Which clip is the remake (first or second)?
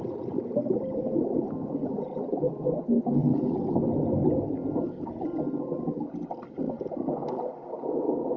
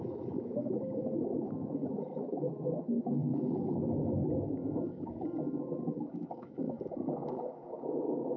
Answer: second